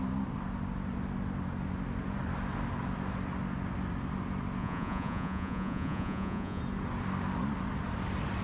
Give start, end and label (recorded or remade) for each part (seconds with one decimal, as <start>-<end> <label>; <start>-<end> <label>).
0.0-4.6 recorded; 4.6-6.6 remade; 6.6-8.4 recorded